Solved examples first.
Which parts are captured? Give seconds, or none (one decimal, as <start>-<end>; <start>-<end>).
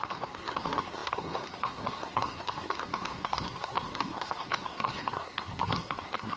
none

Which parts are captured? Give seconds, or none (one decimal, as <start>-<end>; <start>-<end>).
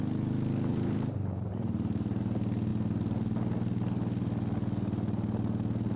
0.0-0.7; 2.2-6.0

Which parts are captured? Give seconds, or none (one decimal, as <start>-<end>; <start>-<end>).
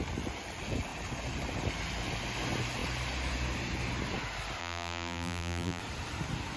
0.0-4.6; 5.8-6.6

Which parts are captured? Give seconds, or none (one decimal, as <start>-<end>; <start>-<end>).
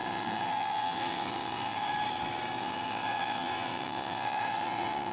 1.9-2.6